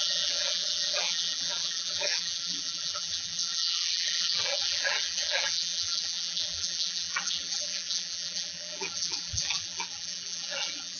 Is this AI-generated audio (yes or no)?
yes